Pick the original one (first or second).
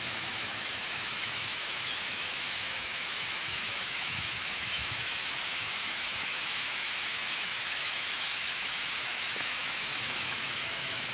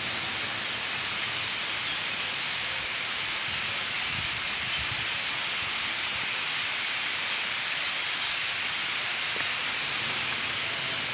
second